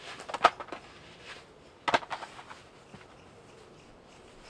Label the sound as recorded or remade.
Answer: recorded